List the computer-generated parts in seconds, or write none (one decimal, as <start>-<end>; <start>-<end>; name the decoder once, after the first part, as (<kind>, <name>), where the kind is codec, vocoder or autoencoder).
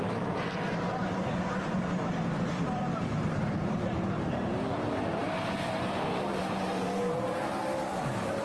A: 0.0-8.4 (vocoder, BigVGAN v2)